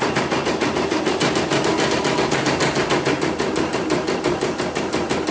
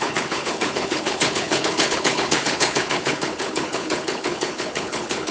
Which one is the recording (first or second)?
first